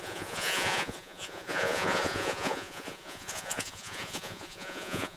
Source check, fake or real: fake